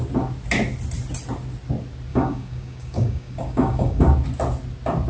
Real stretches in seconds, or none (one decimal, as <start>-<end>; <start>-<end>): 0.0-2.1; 4.0-5.1